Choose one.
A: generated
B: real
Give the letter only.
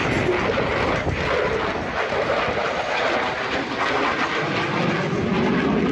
B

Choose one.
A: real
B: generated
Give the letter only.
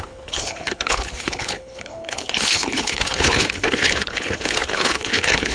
B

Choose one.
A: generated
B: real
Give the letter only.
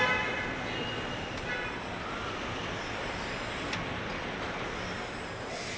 B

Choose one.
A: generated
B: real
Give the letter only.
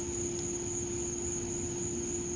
B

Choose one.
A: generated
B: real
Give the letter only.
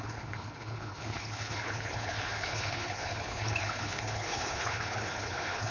A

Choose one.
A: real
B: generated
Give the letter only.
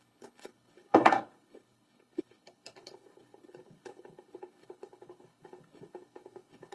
B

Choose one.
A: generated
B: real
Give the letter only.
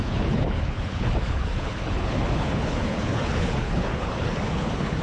A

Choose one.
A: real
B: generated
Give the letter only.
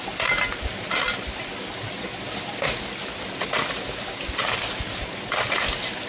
A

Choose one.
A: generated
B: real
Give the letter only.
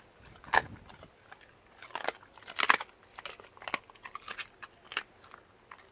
B